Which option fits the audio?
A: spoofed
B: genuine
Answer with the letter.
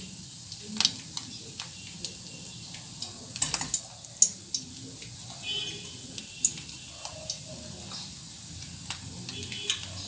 B